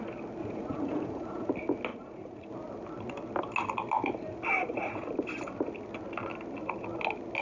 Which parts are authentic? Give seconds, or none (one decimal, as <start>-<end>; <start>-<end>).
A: 0.0-0.4; 1.5-1.9; 2.5-4.6; 5.1-7.4

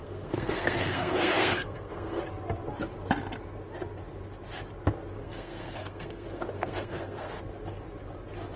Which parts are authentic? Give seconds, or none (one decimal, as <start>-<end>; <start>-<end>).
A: 2.2-5.2; 7.4-8.6